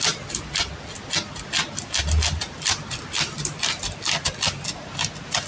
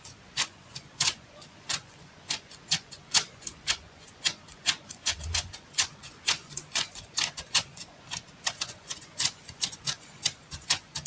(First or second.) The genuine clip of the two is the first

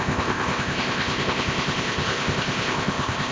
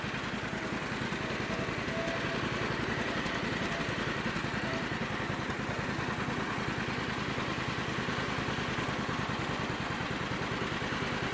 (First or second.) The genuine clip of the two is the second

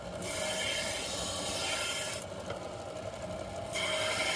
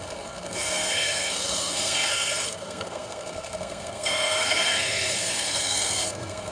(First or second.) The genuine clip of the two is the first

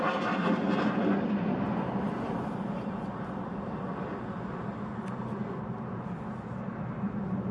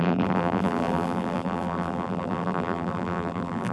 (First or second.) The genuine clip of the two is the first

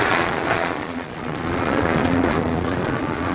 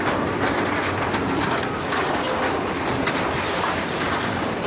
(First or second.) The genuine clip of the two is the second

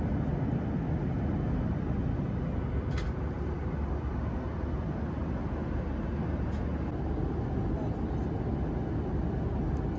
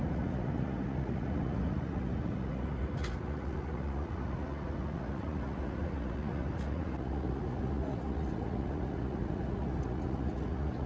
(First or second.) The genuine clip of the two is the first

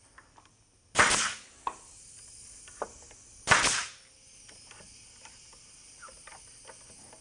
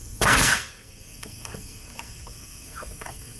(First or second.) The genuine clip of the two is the first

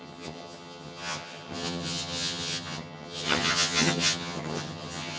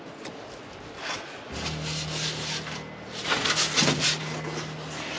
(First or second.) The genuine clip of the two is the second